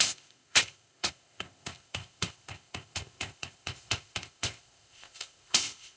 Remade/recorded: remade